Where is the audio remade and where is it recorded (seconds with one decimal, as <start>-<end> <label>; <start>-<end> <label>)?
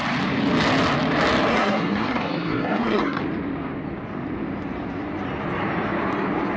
0.0-1.5 recorded; 1.5-3.2 remade; 3.2-6.6 recorded